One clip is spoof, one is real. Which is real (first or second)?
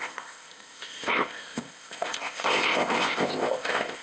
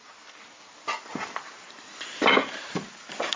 second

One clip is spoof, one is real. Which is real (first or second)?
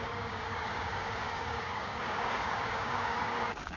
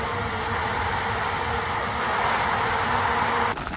second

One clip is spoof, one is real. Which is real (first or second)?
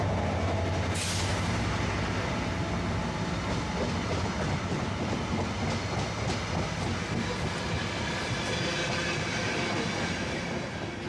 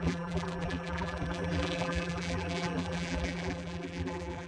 first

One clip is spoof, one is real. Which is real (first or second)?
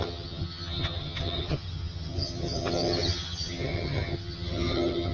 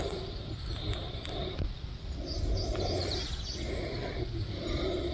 second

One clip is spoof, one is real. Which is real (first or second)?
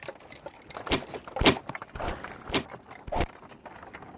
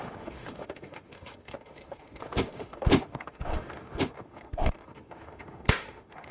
first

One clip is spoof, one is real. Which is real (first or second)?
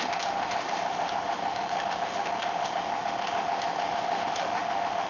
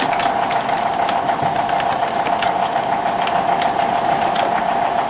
second